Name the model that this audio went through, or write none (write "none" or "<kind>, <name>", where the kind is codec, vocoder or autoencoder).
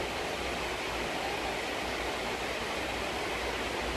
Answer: none